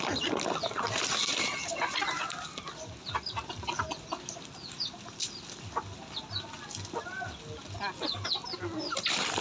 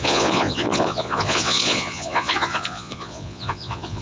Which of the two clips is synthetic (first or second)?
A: second